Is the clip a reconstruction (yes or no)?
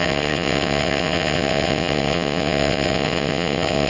yes